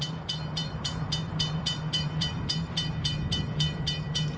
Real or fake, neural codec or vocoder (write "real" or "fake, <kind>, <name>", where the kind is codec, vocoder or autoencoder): fake, vocoder, BigVGAN v2